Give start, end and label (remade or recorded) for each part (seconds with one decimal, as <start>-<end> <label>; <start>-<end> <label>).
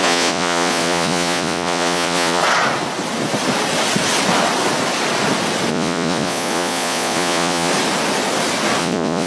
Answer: 0.0-2.4 remade; 2.4-5.7 recorded; 5.7-7.7 remade; 7.7-8.8 recorded; 8.8-9.3 remade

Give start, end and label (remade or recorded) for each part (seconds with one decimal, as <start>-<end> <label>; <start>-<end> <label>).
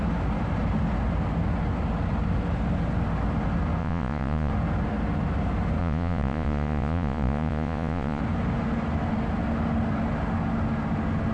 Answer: 0.0-3.8 recorded; 3.8-4.5 remade; 4.5-5.8 recorded; 5.8-8.2 remade; 8.2-11.3 recorded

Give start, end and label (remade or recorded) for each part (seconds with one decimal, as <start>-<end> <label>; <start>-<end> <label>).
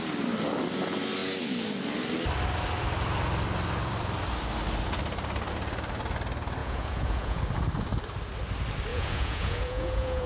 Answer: 0.0-6.6 recorded; 6.6-7.4 remade; 7.4-8.9 recorded; 8.9-10.3 remade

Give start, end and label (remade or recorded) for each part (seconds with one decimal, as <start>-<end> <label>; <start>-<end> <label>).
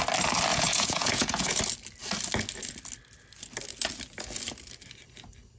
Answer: 0.0-0.5 recorded; 0.5-1.6 remade; 1.6-5.6 recorded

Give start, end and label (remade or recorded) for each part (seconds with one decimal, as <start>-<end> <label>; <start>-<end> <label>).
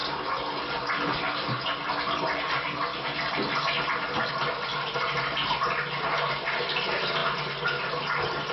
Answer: 0.0-8.5 recorded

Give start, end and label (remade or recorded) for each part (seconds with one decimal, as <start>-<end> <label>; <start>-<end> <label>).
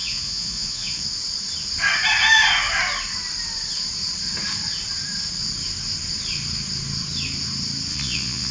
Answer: 0.0-1.0 remade; 1.0-7.9 recorded; 7.9-8.5 remade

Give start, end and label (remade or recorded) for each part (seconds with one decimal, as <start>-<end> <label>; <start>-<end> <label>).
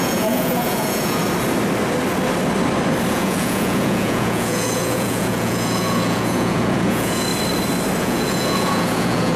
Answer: 0.0-1.2 remade; 1.2-3.1 recorded; 3.1-7.3 remade; 7.3-8.0 recorded; 8.0-9.4 remade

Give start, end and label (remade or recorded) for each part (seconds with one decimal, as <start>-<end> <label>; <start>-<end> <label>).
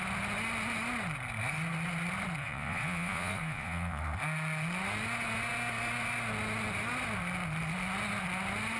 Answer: 0.0-2.4 recorded; 2.4-4.0 remade; 4.0-8.8 recorded